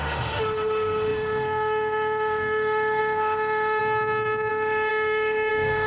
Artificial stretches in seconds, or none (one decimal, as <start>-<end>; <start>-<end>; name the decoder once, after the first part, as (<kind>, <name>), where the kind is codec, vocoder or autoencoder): 0.0-3.8 (autoencoder, DAC-VAE); 4.5-5.9